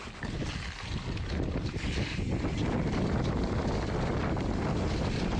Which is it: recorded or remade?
recorded